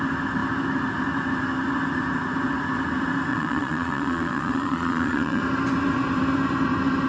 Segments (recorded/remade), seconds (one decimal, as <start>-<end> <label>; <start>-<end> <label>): 0.0-3.3 recorded; 3.3-5.4 remade; 5.4-7.1 recorded